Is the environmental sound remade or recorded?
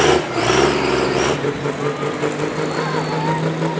recorded